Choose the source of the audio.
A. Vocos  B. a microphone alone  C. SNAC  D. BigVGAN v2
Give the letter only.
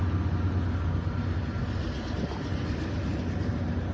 B